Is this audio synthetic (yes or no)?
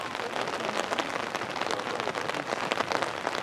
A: no